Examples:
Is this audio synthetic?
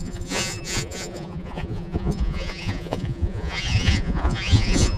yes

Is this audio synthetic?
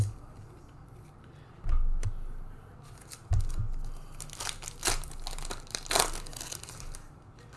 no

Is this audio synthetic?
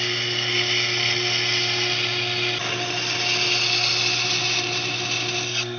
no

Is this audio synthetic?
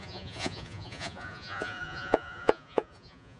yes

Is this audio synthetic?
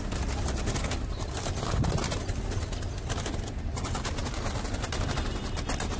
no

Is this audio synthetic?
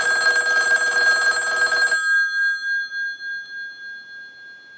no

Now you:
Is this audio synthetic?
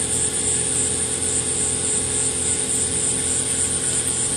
no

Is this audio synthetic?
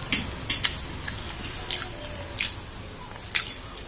no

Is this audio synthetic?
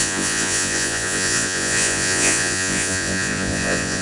yes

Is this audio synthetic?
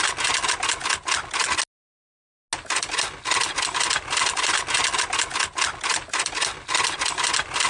no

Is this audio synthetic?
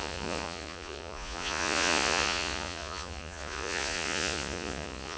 yes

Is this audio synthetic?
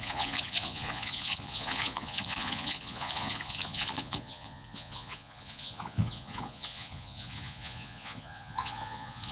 yes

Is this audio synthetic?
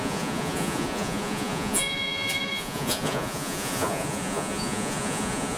yes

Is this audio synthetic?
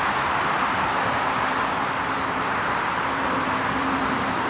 no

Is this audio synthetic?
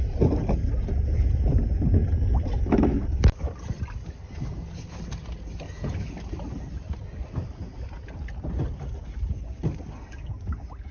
no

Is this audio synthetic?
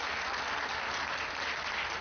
no